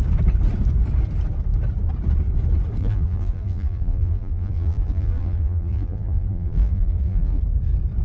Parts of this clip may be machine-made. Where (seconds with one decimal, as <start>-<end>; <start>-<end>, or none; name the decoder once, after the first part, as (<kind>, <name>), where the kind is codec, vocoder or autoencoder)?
2.8-7.4 (vocoder, BigVGAN v2)